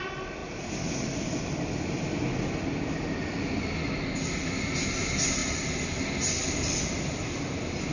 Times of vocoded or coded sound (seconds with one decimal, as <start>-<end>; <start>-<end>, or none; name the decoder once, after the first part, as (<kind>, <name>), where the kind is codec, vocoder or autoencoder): none